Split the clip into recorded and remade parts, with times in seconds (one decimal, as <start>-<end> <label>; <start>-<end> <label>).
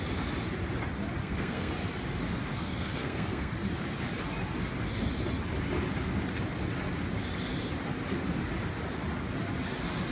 0.0-1.2 recorded; 1.2-1.7 remade; 1.7-2.5 recorded; 2.5-3.5 remade; 3.5-10.1 recorded